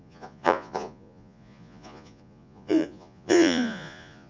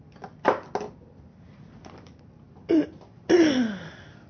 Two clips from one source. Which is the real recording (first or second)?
second